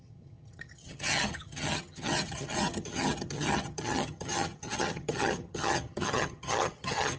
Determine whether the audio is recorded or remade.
remade